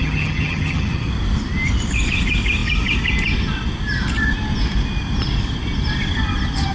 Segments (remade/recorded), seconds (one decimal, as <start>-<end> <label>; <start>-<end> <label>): 0.0-1.1 remade; 1.1-6.7 recorded